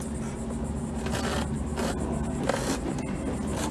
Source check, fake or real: real